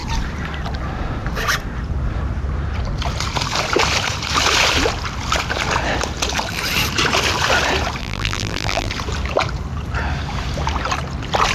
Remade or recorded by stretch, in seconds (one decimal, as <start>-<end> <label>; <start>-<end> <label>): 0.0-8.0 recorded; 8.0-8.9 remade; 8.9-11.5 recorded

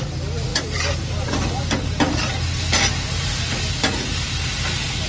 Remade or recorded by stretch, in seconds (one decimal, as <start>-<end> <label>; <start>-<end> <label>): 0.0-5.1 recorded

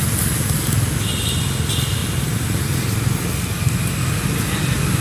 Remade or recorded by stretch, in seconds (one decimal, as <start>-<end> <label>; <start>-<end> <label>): 0.0-2.0 recorded; 2.0-2.6 remade; 2.6-5.0 recorded

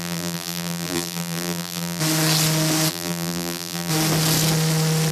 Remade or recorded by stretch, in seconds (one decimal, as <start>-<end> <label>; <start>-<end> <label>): 0.0-2.0 remade; 2.0-2.9 recorded; 2.9-3.9 remade; 3.9-5.1 recorded

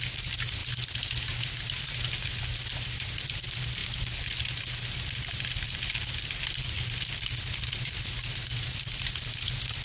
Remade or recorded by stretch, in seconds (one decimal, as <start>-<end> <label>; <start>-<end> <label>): 0.0-9.8 recorded